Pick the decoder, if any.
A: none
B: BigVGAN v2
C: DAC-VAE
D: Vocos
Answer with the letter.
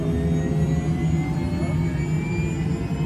A